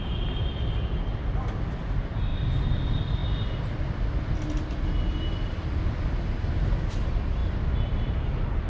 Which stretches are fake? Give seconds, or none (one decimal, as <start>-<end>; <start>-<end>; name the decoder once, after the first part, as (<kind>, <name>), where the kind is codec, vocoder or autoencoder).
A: none